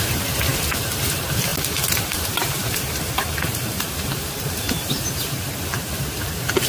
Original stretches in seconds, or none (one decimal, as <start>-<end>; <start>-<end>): 0.0-1.5; 4.9-6.7